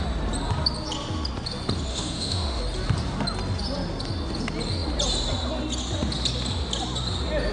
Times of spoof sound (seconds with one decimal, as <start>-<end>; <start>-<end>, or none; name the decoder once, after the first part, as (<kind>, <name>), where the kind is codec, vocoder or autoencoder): 1.9-2.6 (autoencoder, DAC-VAE)